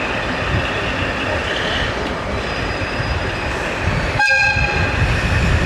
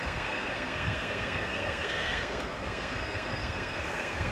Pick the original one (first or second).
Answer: first